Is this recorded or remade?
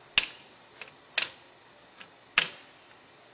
recorded